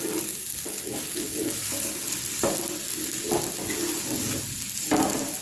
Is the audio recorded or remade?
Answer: recorded